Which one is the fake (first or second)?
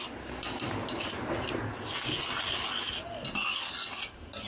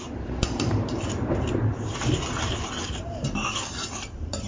second